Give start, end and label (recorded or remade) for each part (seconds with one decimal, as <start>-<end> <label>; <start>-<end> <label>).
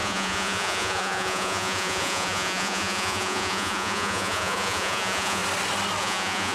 0.0-5.4 remade; 5.4-6.0 recorded; 6.0-6.5 remade